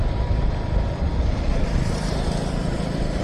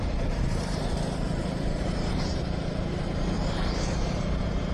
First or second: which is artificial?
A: second